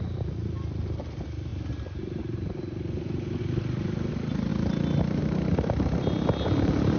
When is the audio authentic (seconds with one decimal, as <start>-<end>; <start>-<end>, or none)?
0.0-7.0